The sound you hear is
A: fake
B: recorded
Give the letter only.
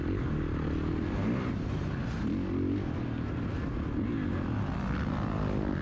B